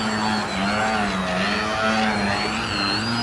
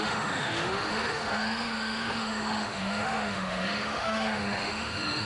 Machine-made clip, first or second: second